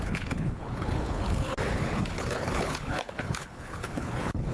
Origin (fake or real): fake